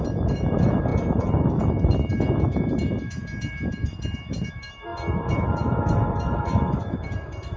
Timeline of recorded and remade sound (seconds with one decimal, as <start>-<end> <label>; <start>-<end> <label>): 0.0-7.6 remade